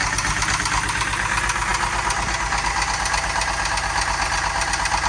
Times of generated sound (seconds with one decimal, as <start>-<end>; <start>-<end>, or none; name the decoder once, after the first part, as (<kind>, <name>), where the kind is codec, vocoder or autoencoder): none